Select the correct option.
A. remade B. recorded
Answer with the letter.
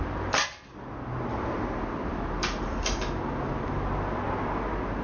B